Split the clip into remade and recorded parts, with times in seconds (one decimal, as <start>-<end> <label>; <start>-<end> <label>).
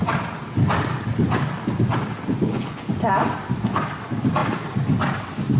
0.0-2.4 recorded; 2.4-2.9 remade; 2.9-5.6 recorded